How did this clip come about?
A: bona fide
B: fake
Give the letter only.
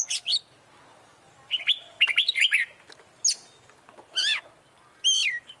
A